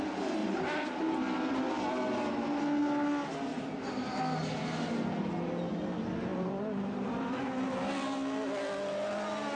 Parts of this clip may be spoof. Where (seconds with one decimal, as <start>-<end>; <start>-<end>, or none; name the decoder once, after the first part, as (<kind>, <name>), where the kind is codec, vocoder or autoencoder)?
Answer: 0.4-1.0 (vocoder, BigVGAN v2); 3.5-4.2; 6.3-7.1